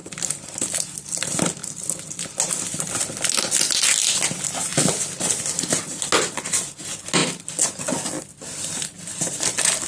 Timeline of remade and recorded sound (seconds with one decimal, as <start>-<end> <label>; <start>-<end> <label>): 0.0-9.9 recorded